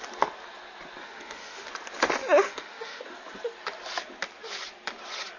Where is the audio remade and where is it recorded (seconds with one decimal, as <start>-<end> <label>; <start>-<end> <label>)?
0.0-1.0 recorded; 1.0-1.7 remade; 1.7-2.2 recorded; 2.2-3.0 remade; 3.0-5.4 recorded